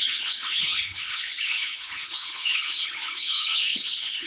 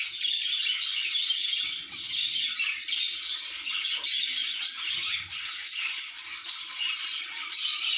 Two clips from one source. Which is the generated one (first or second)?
first